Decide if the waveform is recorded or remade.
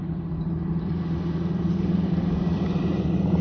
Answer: remade